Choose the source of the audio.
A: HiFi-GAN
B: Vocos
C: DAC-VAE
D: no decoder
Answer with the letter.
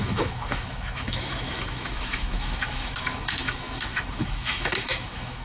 C